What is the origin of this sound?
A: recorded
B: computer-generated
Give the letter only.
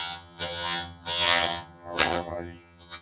B